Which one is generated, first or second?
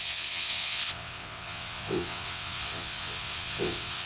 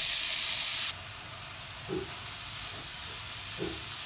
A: first